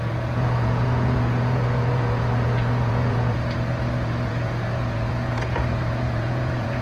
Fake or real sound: fake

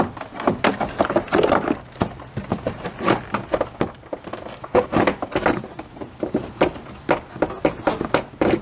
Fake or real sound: real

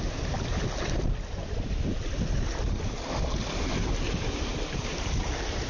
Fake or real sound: real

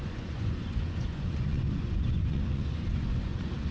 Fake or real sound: fake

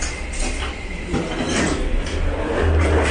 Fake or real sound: real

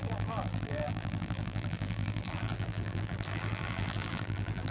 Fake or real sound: fake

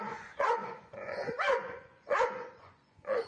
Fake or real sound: fake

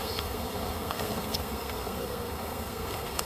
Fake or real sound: fake